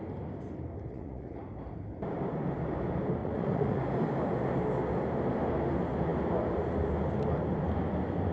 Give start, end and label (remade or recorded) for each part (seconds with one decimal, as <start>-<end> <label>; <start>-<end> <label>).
0.0-0.9 recorded; 0.9-1.4 remade; 1.4-3.2 recorded; 3.2-3.8 remade; 3.8-8.3 recorded